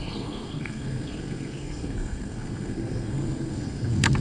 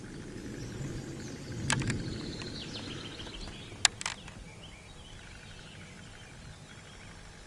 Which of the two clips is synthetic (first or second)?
first